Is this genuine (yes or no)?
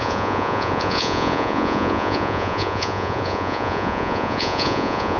no